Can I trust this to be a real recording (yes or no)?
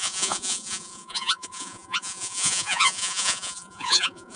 no